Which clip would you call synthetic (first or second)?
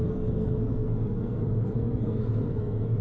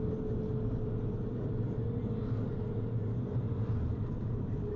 first